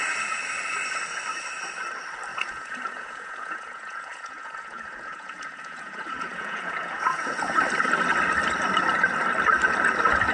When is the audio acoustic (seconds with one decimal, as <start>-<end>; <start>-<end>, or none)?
0.0-2.3; 7.6-10.3